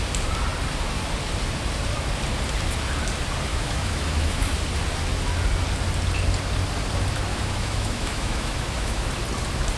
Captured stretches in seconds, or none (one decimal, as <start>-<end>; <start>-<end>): 0.0-3.5; 4.4-7.3; 9.1-9.8